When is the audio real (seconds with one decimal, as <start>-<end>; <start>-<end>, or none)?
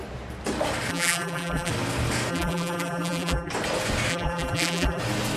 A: 0.0-0.9; 1.7-2.3; 3.5-4.1; 5.0-5.4